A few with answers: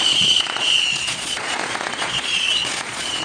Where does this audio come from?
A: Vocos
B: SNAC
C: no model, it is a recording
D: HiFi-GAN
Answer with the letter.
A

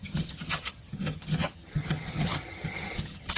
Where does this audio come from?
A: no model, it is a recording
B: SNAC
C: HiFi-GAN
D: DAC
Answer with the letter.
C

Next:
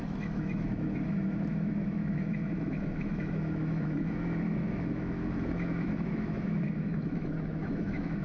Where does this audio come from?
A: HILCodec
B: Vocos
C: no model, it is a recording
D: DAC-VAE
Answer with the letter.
D